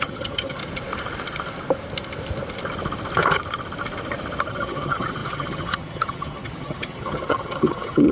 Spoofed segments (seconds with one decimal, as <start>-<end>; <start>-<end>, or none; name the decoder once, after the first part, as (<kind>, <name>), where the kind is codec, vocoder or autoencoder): 0.0-0.6 (vocoder, HiFi-GAN); 4.5-8.1